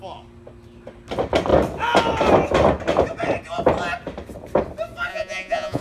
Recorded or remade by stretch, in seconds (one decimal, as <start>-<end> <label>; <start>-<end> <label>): 0.0-5.1 recorded; 5.1-5.8 remade